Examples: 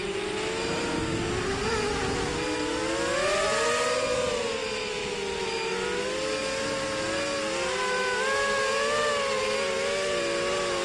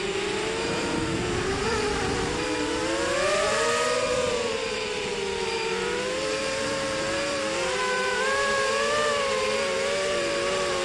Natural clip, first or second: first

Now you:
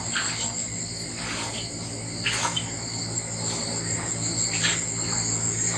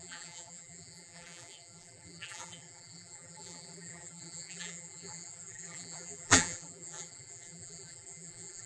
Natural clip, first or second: first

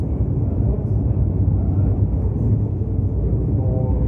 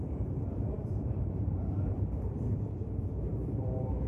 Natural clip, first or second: first